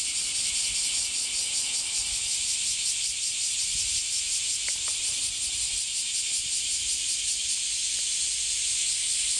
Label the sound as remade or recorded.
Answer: recorded